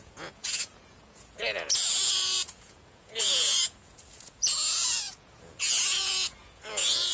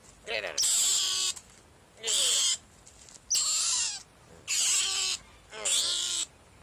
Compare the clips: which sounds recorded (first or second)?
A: second